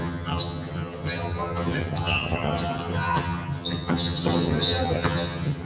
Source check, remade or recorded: remade